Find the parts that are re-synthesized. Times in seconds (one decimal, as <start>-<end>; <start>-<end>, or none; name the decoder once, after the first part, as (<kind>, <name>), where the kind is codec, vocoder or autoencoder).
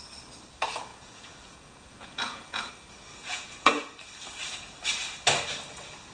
0.9-2.7 (vocoder, Vocos); 3.2-3.8